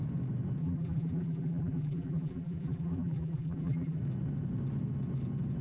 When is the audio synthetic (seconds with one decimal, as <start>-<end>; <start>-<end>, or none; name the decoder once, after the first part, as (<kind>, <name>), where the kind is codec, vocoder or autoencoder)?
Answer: 0.6-4.0 (vocoder, BigVGAN v2)